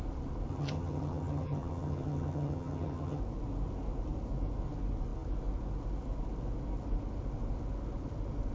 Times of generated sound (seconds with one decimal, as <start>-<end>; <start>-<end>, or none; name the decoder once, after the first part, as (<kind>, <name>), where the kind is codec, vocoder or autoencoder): 0.5-3.2 (vocoder, HiFi-GAN)